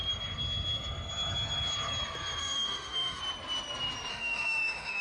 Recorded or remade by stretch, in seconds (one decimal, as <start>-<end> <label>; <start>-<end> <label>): 0.0-2.4 recorded; 2.4-3.2 remade; 3.2-4.1 recorded; 4.1-5.0 remade